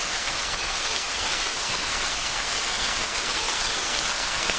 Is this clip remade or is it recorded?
remade